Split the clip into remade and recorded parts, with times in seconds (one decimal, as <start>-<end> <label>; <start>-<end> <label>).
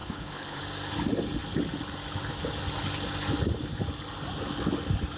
0.0-0.6 remade; 0.6-5.2 recorded